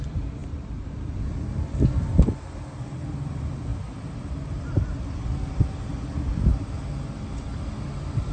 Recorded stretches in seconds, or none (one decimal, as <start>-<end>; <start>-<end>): 3.7-5.9; 6.5-8.3